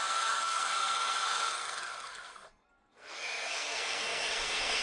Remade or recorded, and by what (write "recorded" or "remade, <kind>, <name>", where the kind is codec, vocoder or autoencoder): remade, codec, SNAC